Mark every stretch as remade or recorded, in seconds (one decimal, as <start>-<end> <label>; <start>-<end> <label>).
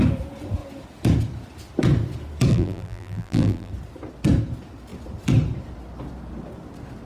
0.0-2.5 recorded; 2.5-3.7 remade; 3.7-7.1 recorded